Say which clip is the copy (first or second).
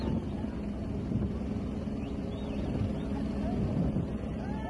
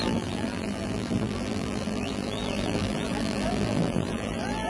second